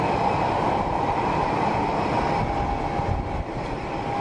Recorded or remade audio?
recorded